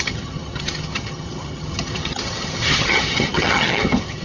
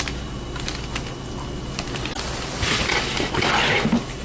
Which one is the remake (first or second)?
first